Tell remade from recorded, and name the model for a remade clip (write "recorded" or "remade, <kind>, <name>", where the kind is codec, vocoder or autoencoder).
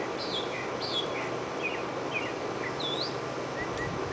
recorded